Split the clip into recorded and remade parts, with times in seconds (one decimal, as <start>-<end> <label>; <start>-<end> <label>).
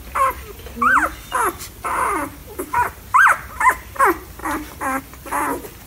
0.0-2.4 recorded; 2.4-4.0 remade; 4.0-4.4 recorded; 4.4-5.0 remade; 5.0-5.9 recorded